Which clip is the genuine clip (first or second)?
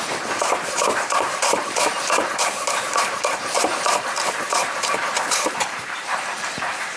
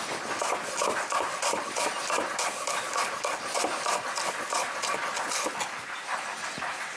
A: second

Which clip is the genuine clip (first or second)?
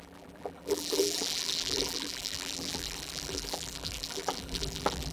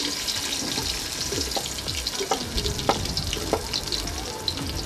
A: second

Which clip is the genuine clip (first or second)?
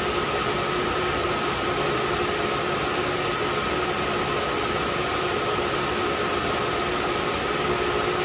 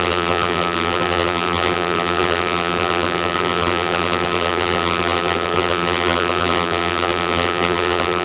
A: first